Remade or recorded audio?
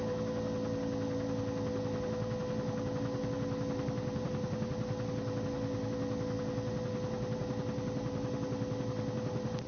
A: recorded